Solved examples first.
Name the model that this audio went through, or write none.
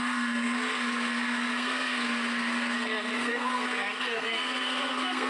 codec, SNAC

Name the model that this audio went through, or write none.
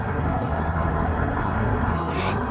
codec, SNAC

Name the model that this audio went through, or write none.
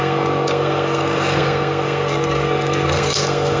codec, SNAC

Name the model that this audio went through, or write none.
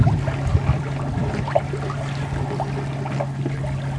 none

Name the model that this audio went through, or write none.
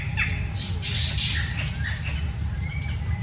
none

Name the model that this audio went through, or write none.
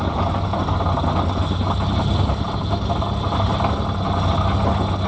none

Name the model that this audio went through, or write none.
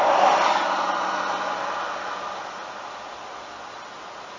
none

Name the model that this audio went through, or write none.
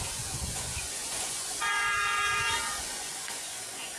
vocoder, Vocos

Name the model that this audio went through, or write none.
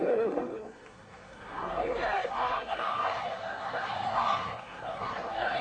codec, SNAC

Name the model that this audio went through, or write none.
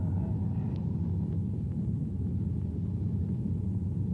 none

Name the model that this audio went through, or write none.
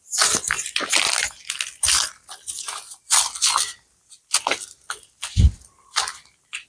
none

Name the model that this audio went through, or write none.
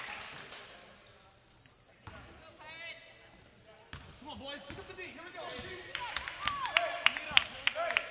none